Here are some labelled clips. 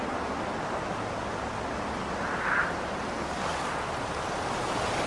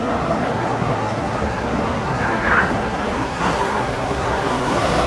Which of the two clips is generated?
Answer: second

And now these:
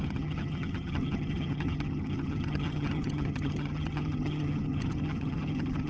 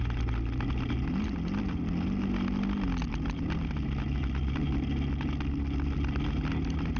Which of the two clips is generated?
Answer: first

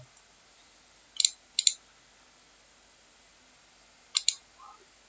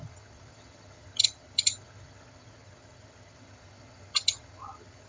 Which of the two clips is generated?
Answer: second